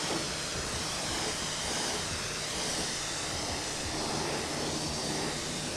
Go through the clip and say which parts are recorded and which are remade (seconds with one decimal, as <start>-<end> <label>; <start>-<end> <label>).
0.0-0.5 recorded; 0.5-4.0 remade; 4.0-5.8 recorded